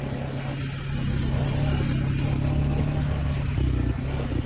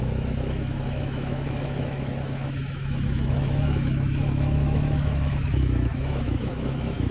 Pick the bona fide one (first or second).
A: first